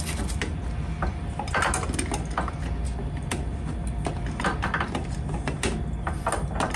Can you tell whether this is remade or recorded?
recorded